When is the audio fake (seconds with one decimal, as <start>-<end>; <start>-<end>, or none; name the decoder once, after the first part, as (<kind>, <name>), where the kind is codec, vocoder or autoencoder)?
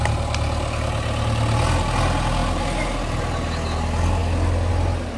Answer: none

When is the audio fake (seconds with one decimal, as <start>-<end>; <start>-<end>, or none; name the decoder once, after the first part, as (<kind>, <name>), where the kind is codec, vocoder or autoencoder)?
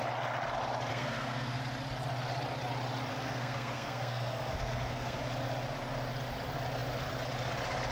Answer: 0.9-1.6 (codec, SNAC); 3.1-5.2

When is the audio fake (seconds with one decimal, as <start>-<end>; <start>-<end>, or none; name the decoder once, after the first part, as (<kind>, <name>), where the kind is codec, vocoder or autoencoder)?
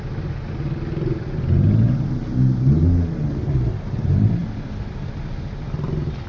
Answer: none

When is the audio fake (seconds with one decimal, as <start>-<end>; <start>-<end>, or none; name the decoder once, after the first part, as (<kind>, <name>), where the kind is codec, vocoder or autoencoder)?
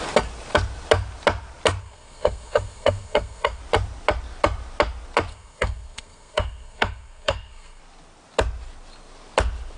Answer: 1.8-3.6 (codec, SNAC); 5.3-7.8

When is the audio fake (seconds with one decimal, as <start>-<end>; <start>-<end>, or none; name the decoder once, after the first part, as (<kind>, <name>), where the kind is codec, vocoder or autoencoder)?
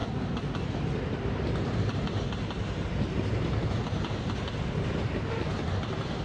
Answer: none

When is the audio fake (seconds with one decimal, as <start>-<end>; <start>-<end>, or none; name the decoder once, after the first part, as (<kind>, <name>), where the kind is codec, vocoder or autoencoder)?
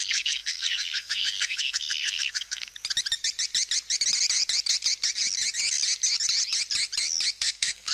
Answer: 0.0-2.7 (codec, SNAC); 7.4-7.9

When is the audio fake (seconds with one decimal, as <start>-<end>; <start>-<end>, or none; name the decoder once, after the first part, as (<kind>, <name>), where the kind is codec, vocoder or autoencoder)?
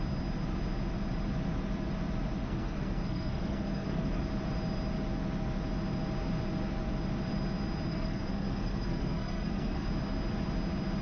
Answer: 2.4-4.2 (codec, SNAC); 7.9-9.9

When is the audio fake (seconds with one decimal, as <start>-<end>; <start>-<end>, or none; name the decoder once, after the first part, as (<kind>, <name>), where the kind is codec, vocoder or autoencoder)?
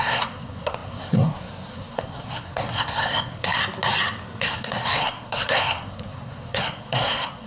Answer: 0.0-3.6 (codec, SNAC); 4.4-7.5